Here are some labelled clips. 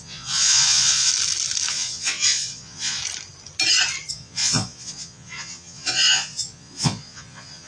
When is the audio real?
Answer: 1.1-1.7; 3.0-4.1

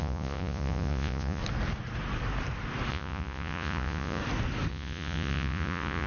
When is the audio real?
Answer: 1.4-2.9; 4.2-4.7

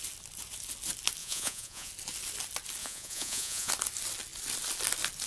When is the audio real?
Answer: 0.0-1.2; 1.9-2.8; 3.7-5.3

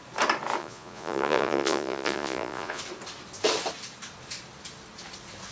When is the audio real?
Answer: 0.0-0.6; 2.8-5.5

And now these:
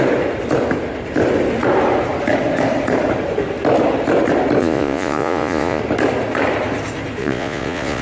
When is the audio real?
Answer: 0.0-4.6; 5.8-7.2

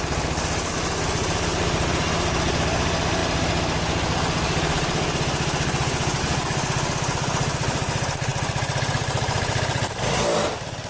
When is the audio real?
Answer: 0.0-10.9